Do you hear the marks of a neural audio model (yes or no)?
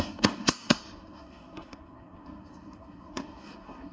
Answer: yes